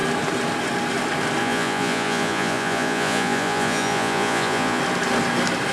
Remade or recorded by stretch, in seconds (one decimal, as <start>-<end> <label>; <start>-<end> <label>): 0.0-1.4 recorded; 1.4-4.8 remade; 4.8-5.7 recorded